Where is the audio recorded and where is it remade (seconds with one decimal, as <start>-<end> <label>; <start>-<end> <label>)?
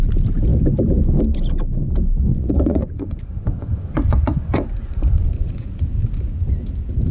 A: 0.0-2.3 recorded; 2.3-5.8 remade; 5.8-7.1 recorded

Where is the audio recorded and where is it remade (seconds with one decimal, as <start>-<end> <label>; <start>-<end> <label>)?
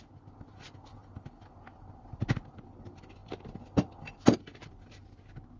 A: 0.0-5.6 recorded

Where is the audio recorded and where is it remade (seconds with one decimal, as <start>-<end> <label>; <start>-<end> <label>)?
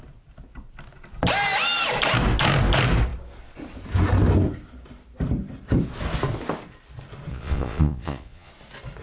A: 0.0-7.3 recorded; 7.3-8.5 remade; 8.5-9.0 recorded